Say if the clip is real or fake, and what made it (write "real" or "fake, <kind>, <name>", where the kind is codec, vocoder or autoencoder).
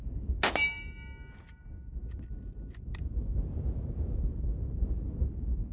real